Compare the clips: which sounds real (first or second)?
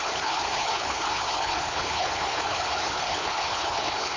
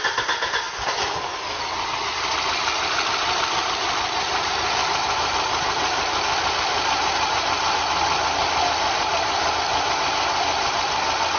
second